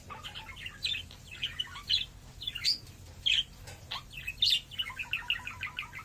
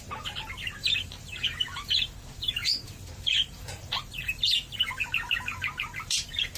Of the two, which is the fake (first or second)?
second